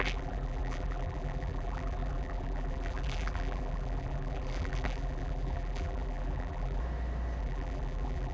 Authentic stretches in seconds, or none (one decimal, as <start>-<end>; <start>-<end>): 6.8-7.4